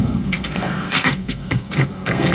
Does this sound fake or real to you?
fake